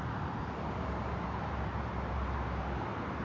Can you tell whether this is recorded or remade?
recorded